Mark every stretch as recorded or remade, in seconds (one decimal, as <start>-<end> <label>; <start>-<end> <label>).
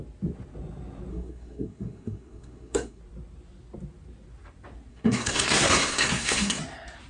0.0-1.1 recorded; 1.1-3.0 remade; 3.0-4.9 recorded; 4.9-6.6 remade; 6.6-7.1 recorded